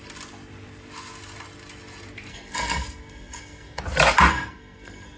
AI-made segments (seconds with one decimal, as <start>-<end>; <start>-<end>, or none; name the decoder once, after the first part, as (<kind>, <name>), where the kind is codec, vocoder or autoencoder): 2.3-3.8 (codec, SNAC); 4.3-5.2